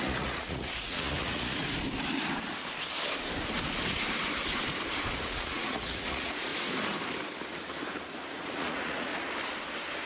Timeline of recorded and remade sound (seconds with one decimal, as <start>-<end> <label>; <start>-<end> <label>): 0.0-1.6 remade; 1.6-5.2 recorded; 5.2-6.5 remade; 6.5-8.3 recorded; 8.3-9.1 remade; 9.1-10.1 recorded